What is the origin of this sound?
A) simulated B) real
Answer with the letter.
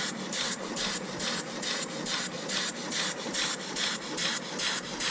B